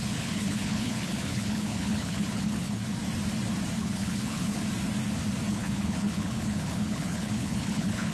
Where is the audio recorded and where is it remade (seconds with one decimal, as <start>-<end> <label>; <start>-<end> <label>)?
0.0-2.8 remade; 2.8-3.8 recorded; 3.8-4.6 remade; 4.6-5.5 recorded; 5.5-8.1 remade